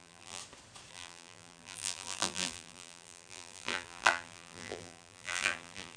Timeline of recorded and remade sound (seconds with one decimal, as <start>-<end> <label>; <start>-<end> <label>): 0.0-0.4 remade; 0.4-0.9 recorded; 0.9-6.0 remade